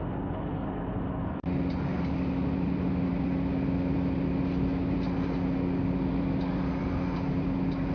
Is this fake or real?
real